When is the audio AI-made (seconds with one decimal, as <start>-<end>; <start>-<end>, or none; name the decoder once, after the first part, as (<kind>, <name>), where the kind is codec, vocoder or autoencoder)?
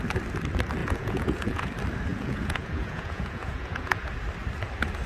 0.8-1.7 (vocoder, Vocos); 2.1-4.1